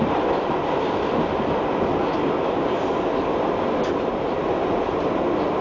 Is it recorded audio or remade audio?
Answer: recorded